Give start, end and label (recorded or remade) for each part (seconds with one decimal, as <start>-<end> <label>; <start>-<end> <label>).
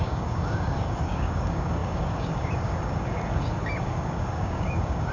0.0-5.1 remade